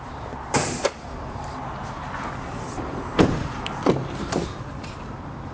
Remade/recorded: remade